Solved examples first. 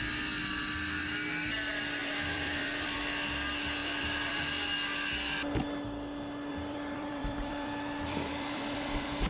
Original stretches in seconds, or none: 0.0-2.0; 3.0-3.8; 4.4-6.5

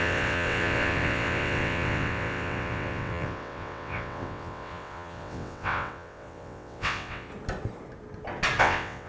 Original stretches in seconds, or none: 7.3-8.6

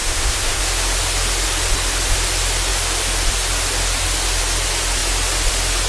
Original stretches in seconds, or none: 0.6-5.9

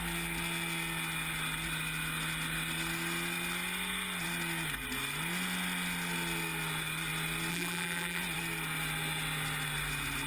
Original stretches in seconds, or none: 0.0-7.5; 8.2-10.3

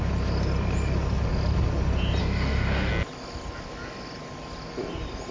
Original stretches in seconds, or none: 0.0-2.2; 2.9-5.3